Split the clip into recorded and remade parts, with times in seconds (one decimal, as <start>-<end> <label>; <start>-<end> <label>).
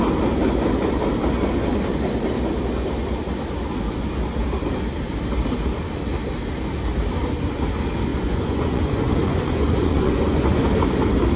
0.0-8.1 recorded; 8.1-10.7 remade; 10.7-11.4 recorded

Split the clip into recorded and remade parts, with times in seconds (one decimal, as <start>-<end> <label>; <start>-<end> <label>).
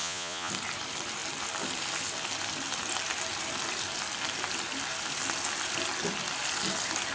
0.0-0.5 remade; 0.5-7.1 recorded